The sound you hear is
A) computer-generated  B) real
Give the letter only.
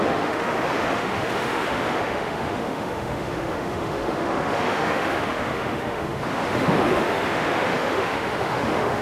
A